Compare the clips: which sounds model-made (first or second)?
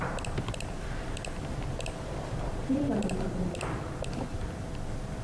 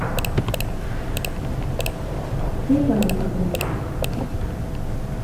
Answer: first